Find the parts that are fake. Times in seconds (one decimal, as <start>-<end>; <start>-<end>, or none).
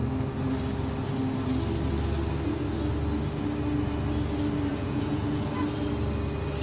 4.7-5.6